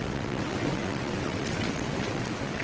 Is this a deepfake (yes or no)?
yes